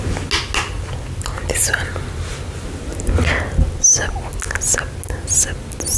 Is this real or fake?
real